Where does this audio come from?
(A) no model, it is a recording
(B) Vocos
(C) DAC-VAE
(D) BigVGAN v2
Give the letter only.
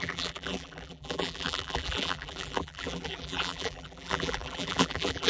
D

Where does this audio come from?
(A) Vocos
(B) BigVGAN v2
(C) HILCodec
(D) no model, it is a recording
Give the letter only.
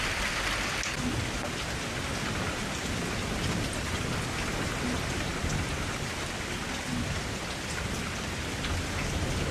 D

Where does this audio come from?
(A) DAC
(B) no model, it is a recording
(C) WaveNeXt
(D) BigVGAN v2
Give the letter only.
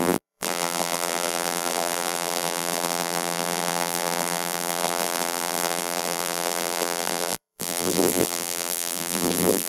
D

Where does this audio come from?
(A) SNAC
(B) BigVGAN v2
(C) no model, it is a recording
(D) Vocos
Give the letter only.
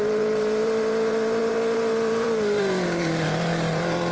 B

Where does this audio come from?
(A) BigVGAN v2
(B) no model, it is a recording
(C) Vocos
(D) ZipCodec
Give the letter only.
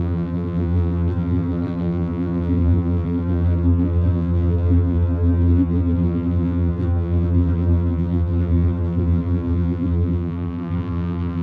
A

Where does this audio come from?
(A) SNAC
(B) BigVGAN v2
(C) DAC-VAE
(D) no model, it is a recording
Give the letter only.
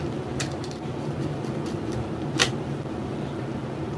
B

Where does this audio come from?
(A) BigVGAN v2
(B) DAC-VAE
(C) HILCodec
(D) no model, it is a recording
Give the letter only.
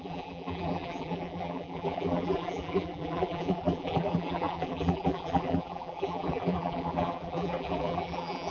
A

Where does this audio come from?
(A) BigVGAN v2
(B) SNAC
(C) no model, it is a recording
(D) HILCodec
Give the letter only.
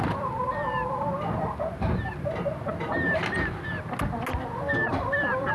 C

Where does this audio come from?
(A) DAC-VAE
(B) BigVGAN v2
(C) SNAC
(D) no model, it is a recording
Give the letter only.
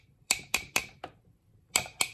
B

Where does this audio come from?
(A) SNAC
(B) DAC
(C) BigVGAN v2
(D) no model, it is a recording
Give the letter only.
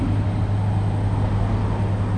D